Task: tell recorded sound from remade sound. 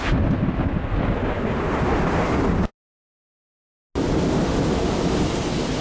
recorded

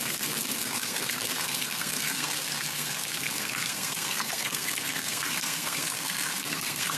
remade